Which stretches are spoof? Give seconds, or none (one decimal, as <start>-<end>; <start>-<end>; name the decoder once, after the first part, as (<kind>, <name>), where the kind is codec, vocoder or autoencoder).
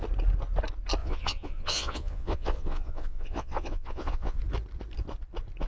1.0-4.4 (vocoder, Vocos)